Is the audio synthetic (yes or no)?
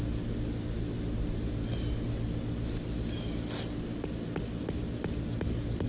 no